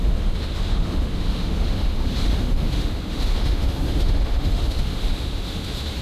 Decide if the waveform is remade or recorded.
remade